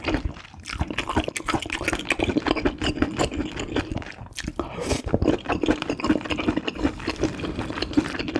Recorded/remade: recorded